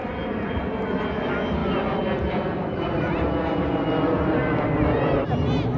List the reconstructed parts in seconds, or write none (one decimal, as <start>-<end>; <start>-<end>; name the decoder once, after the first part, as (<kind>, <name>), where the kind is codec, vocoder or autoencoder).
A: 0.0-0.6 (vocoder, BigVGAN v2)